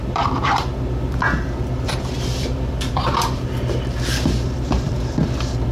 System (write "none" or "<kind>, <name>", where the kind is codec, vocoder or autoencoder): vocoder, BigVGAN v2